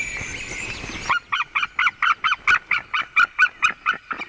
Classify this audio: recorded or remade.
recorded